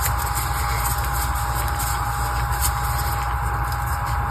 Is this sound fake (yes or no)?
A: no